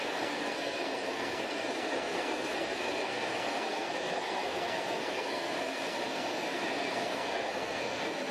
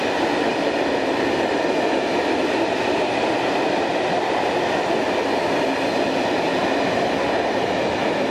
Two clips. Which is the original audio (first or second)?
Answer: second